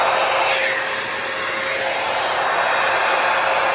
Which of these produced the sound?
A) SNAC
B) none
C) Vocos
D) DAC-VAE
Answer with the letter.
B